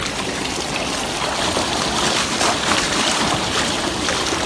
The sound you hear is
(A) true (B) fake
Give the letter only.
A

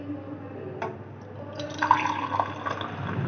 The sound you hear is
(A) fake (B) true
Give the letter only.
B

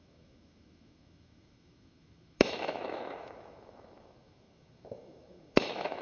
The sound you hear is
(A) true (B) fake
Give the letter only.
B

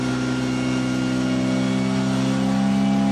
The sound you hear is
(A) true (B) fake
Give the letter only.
A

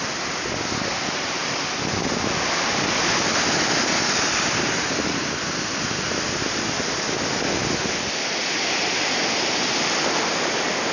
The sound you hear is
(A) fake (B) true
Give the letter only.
B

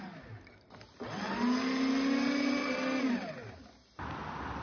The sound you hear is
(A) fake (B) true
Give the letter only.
B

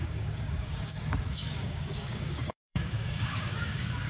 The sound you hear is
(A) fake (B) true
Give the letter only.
A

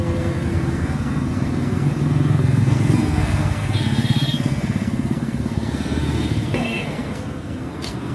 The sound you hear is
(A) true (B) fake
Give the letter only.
B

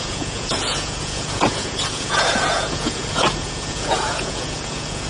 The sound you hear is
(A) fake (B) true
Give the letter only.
A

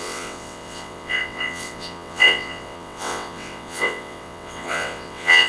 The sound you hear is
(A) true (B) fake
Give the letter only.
B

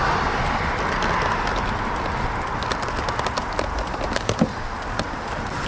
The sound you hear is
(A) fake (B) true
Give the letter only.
B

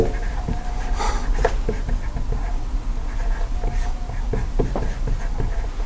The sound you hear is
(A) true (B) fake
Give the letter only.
B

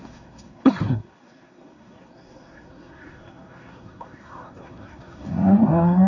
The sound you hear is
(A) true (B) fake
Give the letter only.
B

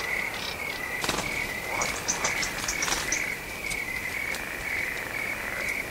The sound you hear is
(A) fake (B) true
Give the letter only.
B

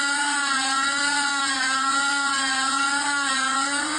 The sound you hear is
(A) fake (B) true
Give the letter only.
A